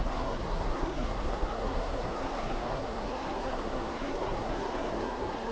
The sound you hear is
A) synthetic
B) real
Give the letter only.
A